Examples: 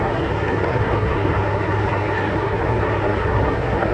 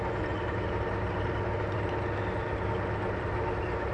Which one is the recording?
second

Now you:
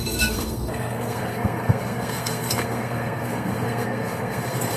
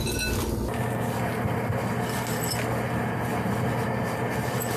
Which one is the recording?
second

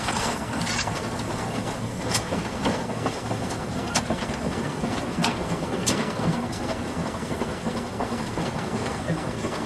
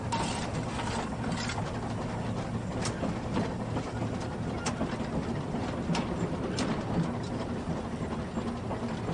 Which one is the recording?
second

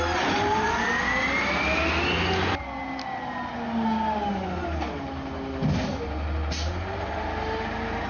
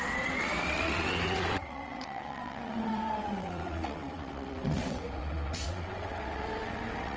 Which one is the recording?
first